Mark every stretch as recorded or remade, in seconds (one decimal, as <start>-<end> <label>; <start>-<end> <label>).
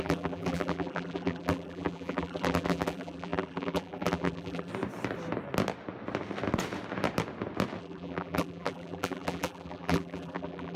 0.0-4.7 remade; 4.7-7.8 recorded; 7.8-10.8 remade